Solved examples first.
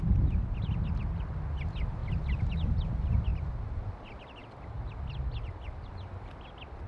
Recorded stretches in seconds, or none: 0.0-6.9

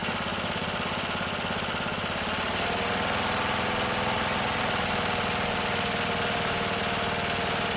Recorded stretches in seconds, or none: 0.0-7.8

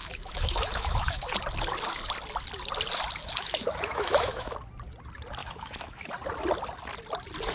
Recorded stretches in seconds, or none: 1.3-3.2; 4.5-5.4; 6.1-7.5

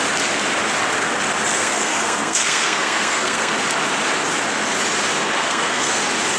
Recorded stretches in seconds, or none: 0.0-1.6; 3.5-5.4; 6.0-6.4

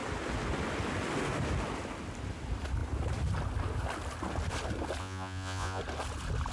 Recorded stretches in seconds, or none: 0.0-5.0; 5.8-6.5